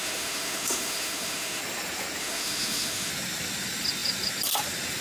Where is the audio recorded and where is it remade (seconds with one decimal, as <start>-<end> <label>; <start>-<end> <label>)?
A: 0.0-1.6 remade; 1.6-2.2 recorded; 2.2-3.1 remade; 3.1-5.0 recorded